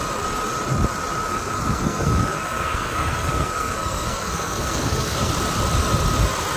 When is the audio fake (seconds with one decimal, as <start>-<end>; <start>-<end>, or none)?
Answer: 1.3-5.3